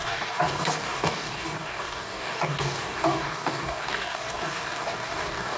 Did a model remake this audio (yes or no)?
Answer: yes